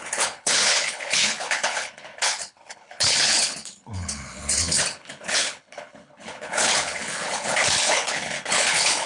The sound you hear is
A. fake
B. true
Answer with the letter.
A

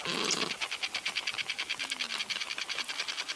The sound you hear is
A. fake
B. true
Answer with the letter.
B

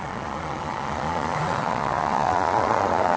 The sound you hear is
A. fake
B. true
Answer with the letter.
A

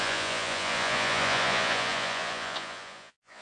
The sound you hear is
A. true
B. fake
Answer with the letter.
B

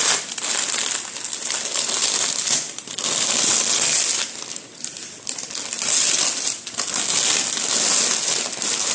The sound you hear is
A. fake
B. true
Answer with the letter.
B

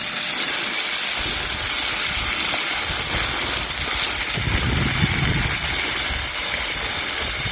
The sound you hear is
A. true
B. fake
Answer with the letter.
A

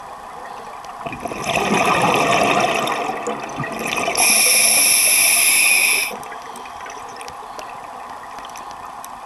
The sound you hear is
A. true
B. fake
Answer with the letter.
A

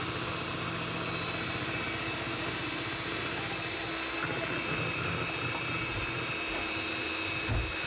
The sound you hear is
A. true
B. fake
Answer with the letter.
A